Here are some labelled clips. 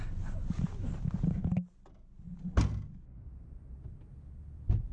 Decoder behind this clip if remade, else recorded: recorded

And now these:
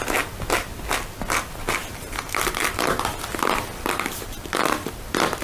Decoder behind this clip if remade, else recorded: recorded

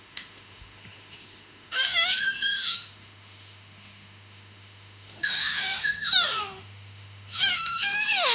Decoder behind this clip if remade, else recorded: remade, autoencoder, DAC-VAE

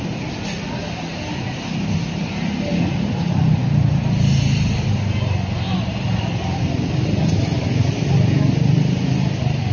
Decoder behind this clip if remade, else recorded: recorded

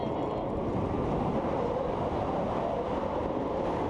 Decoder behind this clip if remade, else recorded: recorded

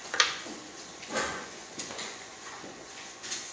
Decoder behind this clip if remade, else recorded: remade, vocoder, Vocos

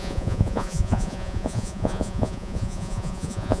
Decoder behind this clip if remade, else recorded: remade, vocoder, Vocos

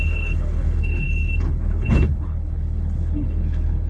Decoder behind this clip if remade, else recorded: remade, codec, HILCodec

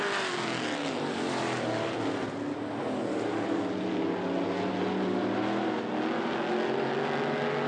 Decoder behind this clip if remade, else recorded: recorded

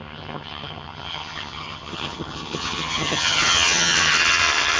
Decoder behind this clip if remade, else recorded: remade, vocoder, HiFi-GAN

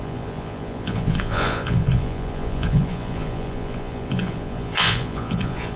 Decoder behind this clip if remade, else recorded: remade, vocoder, Vocos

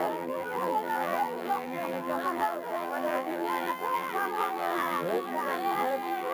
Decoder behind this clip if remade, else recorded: remade, vocoder, BigVGAN v2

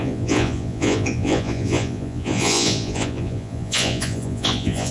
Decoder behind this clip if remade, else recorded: remade, vocoder, Vocos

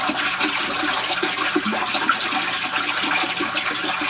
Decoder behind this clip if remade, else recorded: recorded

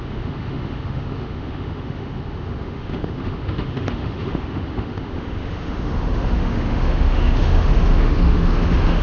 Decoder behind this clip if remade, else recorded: remade, autoencoder, DAC-VAE